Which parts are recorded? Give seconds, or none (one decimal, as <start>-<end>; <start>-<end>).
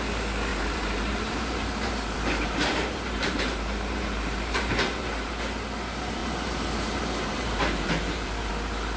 0.0-0.5; 5.3-6.2; 8.5-9.0